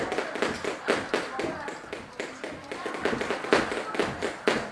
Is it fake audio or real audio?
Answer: real